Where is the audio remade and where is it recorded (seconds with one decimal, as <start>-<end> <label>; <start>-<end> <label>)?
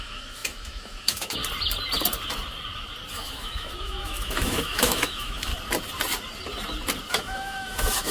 0.0-1.4 remade; 1.4-3.1 recorded; 3.1-5.5 remade; 5.5-7.1 recorded; 7.1-8.1 remade